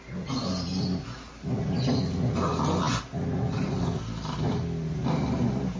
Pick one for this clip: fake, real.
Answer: real